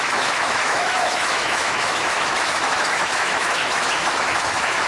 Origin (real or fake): fake